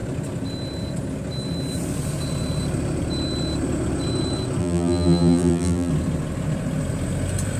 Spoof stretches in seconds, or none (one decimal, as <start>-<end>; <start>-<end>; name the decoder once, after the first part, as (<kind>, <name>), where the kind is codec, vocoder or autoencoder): 4.6-5.9 (vocoder, BigVGAN v2)